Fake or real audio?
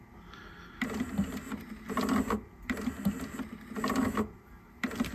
real